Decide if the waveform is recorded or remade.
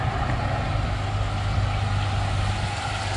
recorded